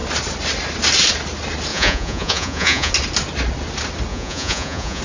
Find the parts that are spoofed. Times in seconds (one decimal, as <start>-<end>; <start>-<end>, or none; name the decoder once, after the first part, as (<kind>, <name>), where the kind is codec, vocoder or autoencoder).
1.7-2.9 (vocoder, Vocos); 4.1-5.0